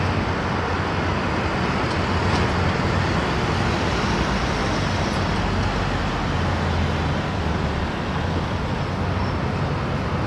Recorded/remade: recorded